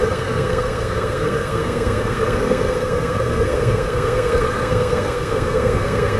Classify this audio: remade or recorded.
remade